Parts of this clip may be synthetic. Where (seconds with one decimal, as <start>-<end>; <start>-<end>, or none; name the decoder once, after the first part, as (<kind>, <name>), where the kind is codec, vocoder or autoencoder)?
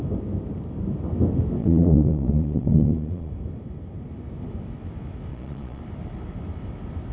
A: 1.6-3.3 (vocoder, Vocos); 5.3-5.8